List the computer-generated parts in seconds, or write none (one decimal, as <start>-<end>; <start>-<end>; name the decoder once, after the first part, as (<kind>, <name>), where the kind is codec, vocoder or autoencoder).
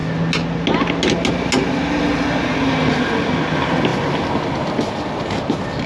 none